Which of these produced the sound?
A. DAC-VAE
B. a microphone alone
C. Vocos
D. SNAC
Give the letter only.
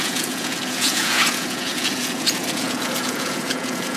C